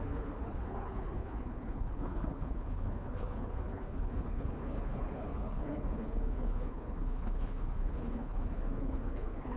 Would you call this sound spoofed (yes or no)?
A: yes